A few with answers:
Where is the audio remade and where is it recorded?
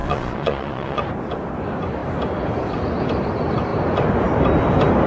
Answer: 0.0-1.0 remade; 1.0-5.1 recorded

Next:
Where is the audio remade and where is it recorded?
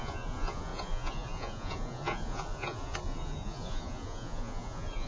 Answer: 0.0-5.1 remade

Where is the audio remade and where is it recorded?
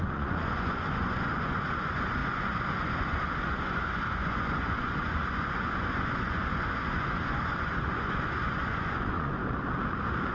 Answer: 0.0-9.4 remade; 9.4-10.3 recorded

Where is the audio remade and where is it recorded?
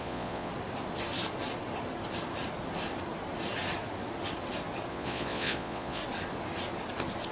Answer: 0.0-0.5 remade; 0.5-4.9 recorded; 4.9-6.0 remade; 6.0-7.3 recorded